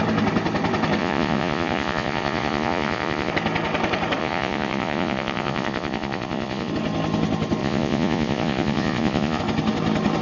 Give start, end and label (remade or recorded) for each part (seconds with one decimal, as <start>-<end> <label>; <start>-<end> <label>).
0.0-1.0 recorded; 1.0-3.3 remade; 3.3-4.2 recorded; 4.2-6.7 remade; 6.7-7.6 recorded; 7.6-9.4 remade; 9.4-10.2 recorded